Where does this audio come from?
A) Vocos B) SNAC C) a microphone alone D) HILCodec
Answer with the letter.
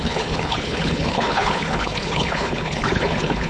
D